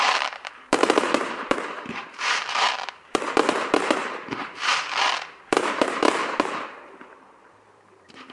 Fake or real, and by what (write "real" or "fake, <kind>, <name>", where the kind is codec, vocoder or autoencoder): fake, vocoder, BigVGAN v2